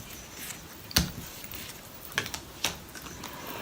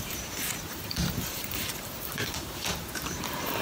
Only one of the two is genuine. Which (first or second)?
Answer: first